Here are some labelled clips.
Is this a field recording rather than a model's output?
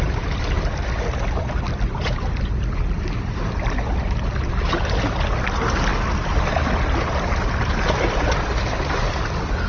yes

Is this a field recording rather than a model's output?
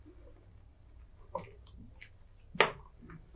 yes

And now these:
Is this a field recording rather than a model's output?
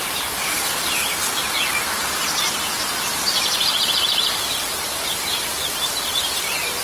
no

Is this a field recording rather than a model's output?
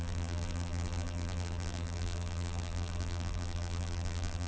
no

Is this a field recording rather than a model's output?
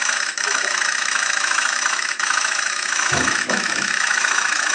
no